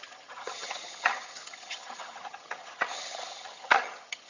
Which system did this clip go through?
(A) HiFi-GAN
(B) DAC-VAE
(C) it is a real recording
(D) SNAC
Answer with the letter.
A